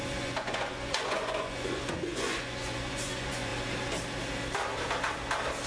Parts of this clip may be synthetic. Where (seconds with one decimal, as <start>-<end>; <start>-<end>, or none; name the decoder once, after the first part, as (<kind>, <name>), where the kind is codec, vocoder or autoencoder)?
0.0-3.5 (vocoder, Vocos)